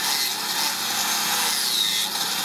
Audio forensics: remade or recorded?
recorded